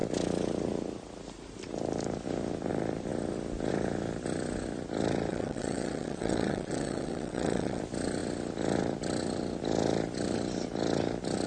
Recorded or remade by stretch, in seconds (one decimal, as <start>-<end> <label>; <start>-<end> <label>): 0.0-5.3 recorded; 5.3-7.8 remade; 7.8-11.5 recorded